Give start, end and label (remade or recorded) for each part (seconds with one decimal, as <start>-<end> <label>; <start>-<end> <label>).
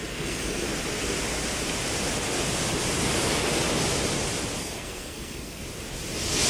0.0-0.7 remade; 0.7-4.6 recorded; 4.6-5.6 remade; 5.6-6.5 recorded